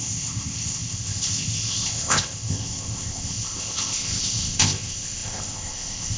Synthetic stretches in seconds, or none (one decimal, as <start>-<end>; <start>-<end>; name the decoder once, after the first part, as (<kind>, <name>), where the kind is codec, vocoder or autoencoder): 0.0-6.2 (codec, ZipCodec)